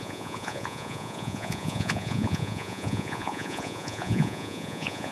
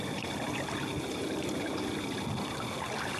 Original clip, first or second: second